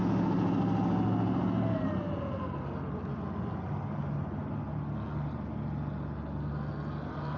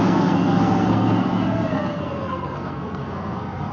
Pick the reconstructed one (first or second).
second